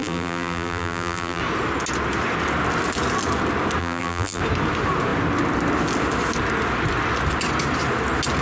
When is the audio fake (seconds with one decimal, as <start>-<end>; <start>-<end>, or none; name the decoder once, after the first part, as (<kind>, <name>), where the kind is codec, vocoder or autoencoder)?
0.0-1.4 (vocoder, BigVGAN v2); 3.8-4.4